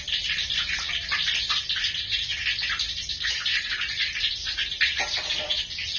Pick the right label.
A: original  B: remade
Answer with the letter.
A